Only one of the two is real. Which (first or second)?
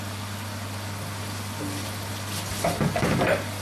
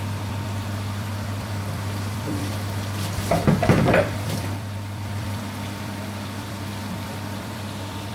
first